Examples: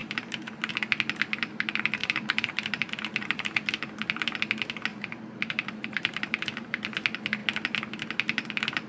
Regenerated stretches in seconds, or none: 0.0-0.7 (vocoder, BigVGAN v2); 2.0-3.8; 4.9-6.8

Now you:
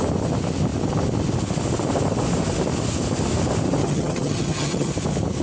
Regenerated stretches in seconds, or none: 3.8-4.9 (vocoder, HiFi-GAN)

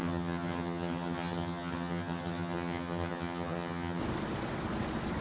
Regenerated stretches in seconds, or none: 0.0-4.0 (vocoder, HiFi-GAN)

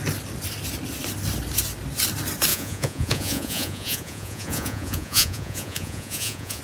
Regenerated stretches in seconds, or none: 2.5-6.6 (vocoder, Vocos)

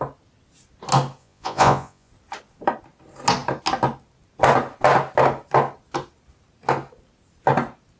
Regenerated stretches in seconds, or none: 1.2-2.1 (vocoder, Vocos)

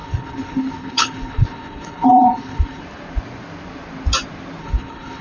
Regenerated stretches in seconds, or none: 0.0-2.8 (codec, HILCodec); 4.6-5.2

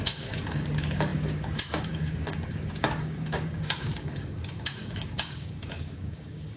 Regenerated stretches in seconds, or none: 0.0-6.6 (codec, DAC)

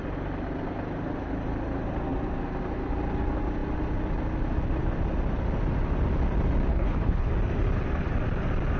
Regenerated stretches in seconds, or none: 6.7-7.3 (codec, HILCodec)